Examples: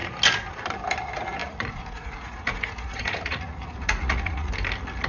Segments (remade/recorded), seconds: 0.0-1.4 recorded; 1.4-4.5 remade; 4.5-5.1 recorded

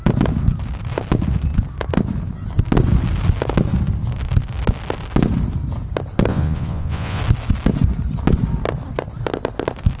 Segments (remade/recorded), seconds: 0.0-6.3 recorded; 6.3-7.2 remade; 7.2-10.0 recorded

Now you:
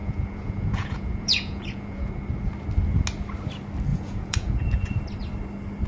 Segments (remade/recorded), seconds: 0.0-2.1 remade; 2.1-3.9 recorded; 3.9-5.0 remade; 5.0-5.9 recorded

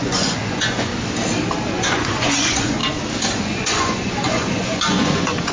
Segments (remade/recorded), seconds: 0.0-0.9 remade; 0.9-1.7 recorded; 1.7-2.8 remade; 2.8-3.4 recorded; 3.4-5.5 remade